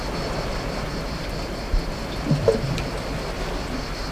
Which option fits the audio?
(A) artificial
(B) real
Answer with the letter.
B